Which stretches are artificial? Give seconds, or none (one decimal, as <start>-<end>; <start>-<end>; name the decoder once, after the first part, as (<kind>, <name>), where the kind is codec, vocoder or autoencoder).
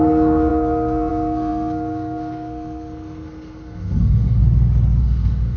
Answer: 0.0-4.4 (codec, SNAC); 5.0-5.6